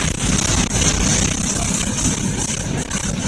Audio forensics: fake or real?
real